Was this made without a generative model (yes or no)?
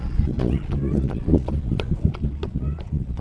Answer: no